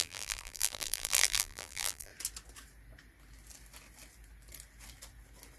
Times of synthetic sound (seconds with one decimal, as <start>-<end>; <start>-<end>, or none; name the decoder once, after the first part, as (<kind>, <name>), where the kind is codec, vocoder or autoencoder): 0.0-2.1 (vocoder, BigVGAN v2)